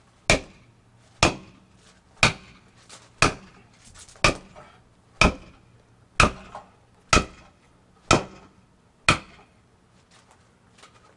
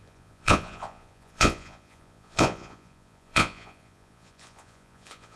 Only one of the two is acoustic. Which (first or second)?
first